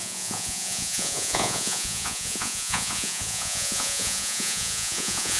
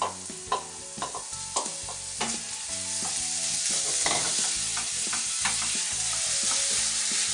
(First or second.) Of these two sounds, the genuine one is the second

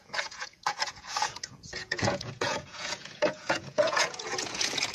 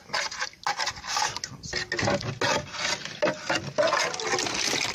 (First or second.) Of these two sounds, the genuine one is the second